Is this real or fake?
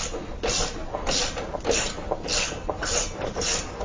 real